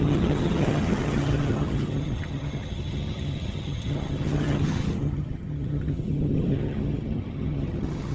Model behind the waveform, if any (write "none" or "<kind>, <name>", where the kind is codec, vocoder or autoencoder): vocoder, HiFi-GAN